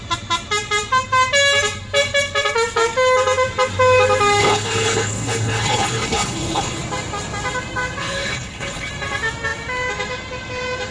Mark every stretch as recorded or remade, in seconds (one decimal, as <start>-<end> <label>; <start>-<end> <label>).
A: 0.0-4.4 recorded; 4.4-6.8 remade; 6.8-8.0 recorded; 8.0-8.9 remade; 8.9-10.9 recorded